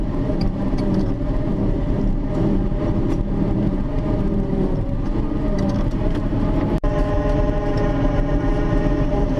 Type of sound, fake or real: fake